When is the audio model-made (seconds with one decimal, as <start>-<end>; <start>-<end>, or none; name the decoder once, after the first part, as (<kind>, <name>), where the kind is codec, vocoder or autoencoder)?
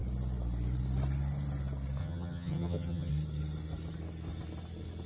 2.0-3.1 (vocoder, HiFi-GAN)